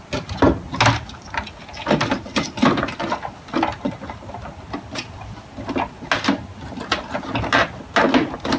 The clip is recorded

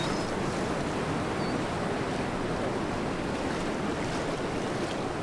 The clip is recorded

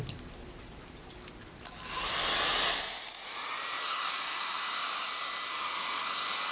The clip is recorded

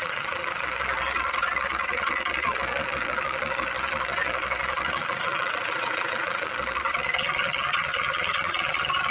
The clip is remade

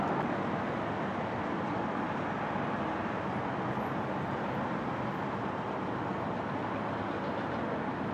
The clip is recorded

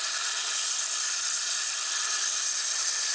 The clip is recorded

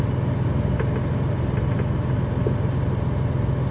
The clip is recorded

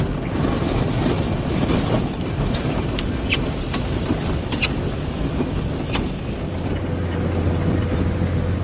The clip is recorded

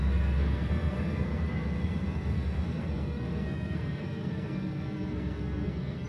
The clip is remade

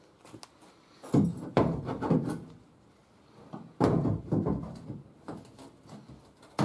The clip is recorded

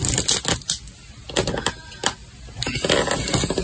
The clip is recorded